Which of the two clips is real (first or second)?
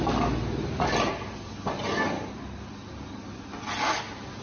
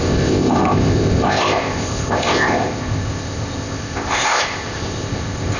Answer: first